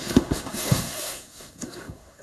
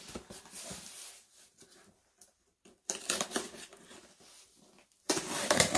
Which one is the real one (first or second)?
second